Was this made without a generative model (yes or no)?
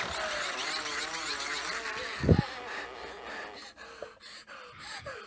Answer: yes